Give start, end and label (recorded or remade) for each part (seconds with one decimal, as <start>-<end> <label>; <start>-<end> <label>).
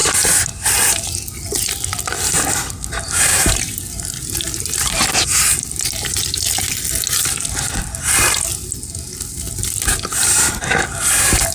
0.0-11.5 recorded